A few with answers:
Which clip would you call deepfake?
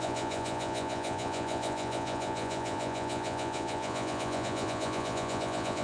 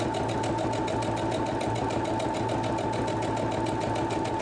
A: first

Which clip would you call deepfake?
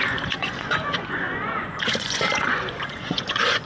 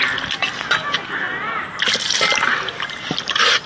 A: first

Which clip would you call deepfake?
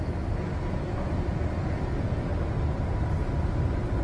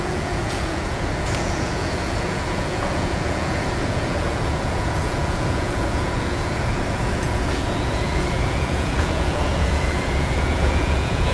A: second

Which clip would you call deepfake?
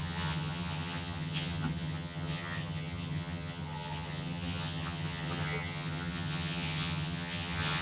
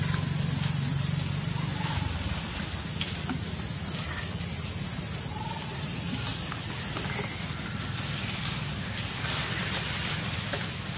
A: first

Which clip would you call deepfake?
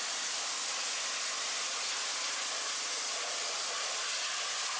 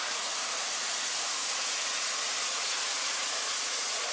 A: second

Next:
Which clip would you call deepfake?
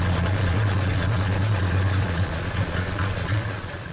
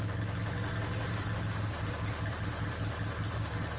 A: first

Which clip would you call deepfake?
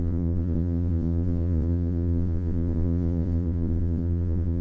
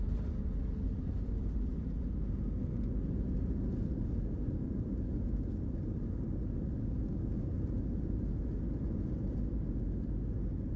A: first